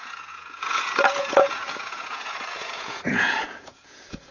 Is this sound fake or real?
fake